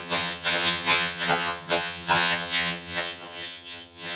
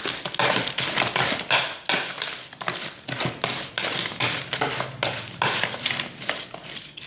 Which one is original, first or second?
second